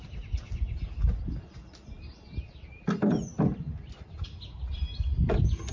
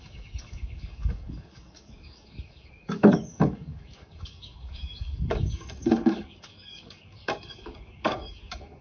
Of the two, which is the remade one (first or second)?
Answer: second